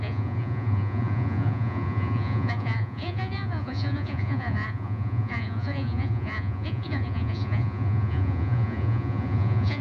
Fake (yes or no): yes